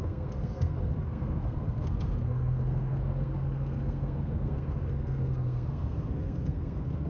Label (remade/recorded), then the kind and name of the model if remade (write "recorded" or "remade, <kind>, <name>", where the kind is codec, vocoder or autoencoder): remade, codec, SNAC